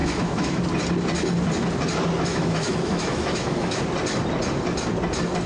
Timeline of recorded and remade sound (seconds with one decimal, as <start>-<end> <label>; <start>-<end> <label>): 0.0-0.6 remade; 0.6-2.3 recorded; 2.3-3.8 remade; 3.8-5.5 recorded